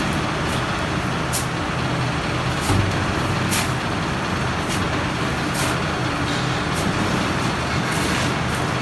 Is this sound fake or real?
real